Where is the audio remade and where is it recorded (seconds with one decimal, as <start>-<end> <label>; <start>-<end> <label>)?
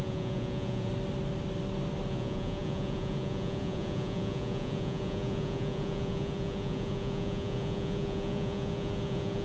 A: 0.0-0.9 remade; 0.9-2.1 recorded; 2.1-9.4 remade